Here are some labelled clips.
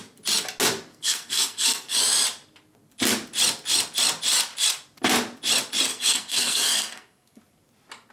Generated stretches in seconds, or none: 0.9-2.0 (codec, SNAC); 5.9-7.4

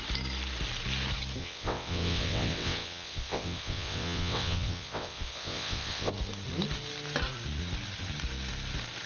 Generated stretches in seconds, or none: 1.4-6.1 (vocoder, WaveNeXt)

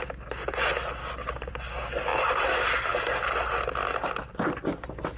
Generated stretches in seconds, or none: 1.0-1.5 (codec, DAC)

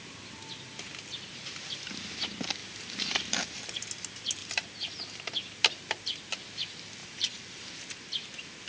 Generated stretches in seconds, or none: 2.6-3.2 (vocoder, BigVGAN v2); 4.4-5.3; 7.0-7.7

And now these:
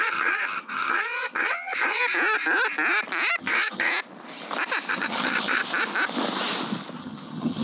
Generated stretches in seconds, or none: 0.0-2.0 (vocoder, HiFi-GAN); 3.4-3.9; 4.9-5.6; 7.0-7.6

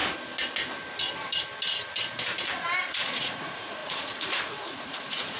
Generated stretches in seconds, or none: 2.8-5.4 (vocoder, Vocos)

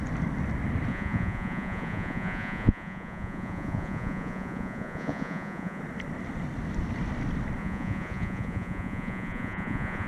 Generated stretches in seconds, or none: 0.9-5.8 (vocoder, Vocos); 7.6-10.1